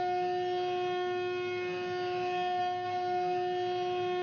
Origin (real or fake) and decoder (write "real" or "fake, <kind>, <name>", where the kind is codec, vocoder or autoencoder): real